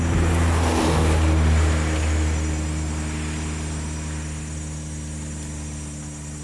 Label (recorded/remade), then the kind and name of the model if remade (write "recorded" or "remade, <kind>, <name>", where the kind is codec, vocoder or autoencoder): recorded